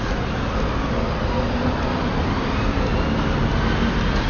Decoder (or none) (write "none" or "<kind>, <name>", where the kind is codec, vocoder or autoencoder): none